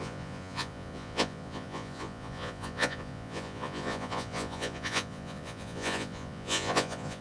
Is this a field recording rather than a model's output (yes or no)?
no